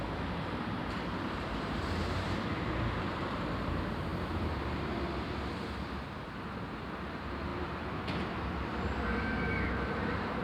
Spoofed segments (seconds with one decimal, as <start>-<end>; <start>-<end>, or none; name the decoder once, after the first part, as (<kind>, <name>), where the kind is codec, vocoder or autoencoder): 0.0-10.4 (vocoder, BigVGAN v2)

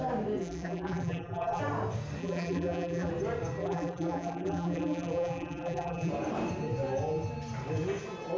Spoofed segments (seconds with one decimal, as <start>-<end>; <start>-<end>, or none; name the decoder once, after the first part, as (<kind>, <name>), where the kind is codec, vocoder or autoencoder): 0.4-1.6 (vocoder, BigVGAN v2); 2.2-3.1; 3.6-6.1